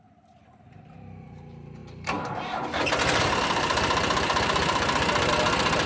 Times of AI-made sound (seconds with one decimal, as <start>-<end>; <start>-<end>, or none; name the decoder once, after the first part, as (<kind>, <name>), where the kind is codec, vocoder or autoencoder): none